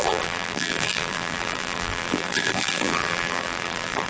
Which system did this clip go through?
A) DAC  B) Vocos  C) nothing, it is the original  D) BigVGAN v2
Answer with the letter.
D